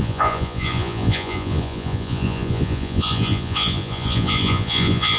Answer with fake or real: fake